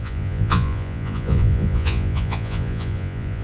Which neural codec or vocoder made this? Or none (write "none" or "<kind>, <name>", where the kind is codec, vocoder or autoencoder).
vocoder, Vocos